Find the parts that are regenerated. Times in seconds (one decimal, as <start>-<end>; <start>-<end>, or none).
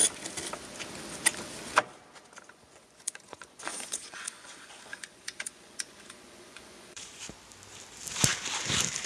2.5-7.2